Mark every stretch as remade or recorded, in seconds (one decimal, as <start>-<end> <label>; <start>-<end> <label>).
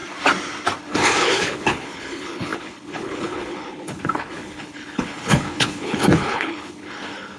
0.0-0.8 recorded; 0.8-7.4 remade